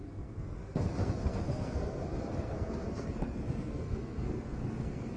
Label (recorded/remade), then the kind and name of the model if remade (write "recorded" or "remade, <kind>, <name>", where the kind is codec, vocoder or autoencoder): remade, codec, SNAC